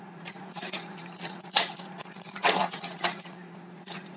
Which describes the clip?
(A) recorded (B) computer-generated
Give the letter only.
B